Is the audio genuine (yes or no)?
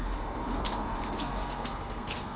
no